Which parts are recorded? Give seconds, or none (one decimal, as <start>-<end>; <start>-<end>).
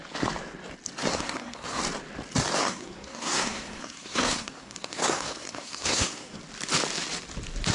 0.0-1.1; 1.8-2.6; 6.4-7.7